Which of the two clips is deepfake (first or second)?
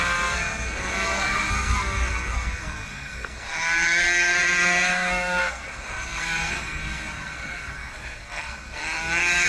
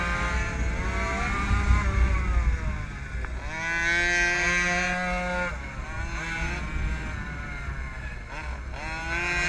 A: first